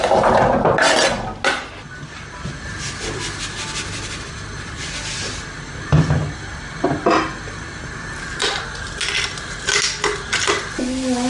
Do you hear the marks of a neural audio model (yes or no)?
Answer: no